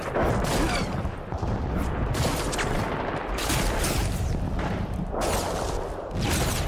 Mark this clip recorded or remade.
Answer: recorded